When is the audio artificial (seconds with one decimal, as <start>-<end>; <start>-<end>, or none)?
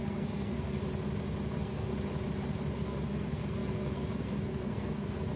0.0-0.8; 1.5-1.9; 2.7-5.4